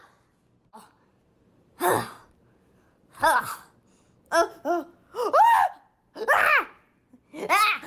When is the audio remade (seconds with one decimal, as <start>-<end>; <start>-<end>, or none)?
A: 1.1-3.2